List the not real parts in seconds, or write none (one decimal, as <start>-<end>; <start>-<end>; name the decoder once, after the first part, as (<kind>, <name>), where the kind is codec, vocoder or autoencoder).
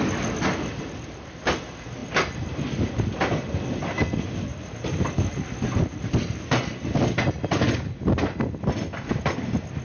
none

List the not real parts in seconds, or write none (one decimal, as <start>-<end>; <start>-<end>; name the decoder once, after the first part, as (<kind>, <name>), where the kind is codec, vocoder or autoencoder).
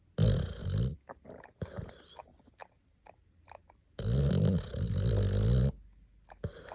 none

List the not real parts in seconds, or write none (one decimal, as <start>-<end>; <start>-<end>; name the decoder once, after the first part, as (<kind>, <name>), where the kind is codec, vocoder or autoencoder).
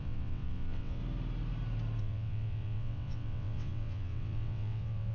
0.0-1.0 (vocoder, WaveNeXt); 2.0-5.1